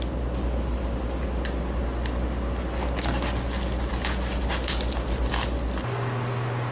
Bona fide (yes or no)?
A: yes